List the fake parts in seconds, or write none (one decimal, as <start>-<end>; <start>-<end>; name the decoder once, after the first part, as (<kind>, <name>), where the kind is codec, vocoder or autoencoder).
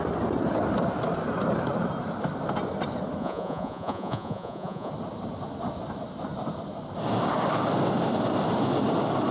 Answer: 3.2-4.9 (vocoder, Vocos)